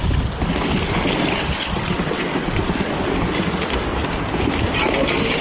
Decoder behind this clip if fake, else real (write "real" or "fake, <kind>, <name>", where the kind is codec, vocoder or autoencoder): real